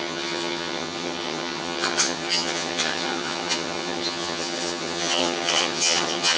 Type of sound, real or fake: fake